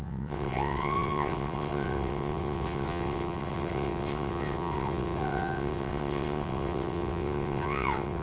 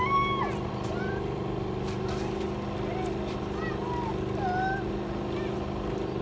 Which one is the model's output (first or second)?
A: first